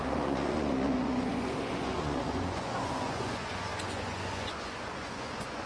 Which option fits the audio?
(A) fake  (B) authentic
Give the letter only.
A